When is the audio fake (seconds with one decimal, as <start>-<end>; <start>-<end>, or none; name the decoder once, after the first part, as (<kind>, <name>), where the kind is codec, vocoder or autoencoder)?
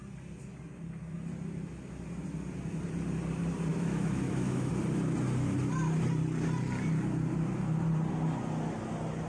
3.7-4.7 (autoencoder, DAC-VAE)